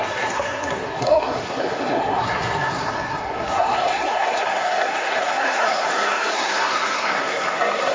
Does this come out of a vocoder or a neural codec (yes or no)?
yes